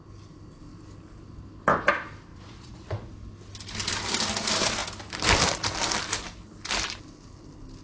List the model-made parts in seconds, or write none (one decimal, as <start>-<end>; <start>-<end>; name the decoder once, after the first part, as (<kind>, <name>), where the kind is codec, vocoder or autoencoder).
2.3-3.1 (vocoder, Vocos)